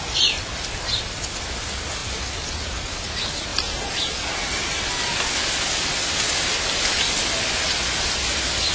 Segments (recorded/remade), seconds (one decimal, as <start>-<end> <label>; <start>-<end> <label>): 0.0-2.0 recorded; 2.0-3.1 remade; 3.1-8.7 recorded